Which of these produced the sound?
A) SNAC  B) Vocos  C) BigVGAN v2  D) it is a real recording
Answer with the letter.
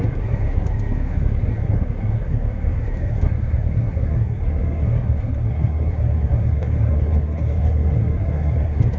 A